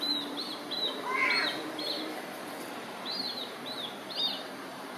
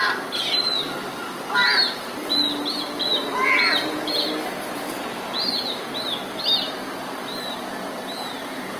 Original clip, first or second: second